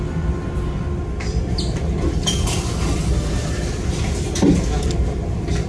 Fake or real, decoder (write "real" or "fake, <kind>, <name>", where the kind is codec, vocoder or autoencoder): real